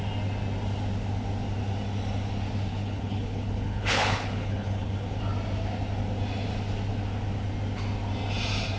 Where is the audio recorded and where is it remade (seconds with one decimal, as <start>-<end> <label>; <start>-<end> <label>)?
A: 0.0-2.7 recorded; 2.7-5.2 remade; 5.2-8.8 recorded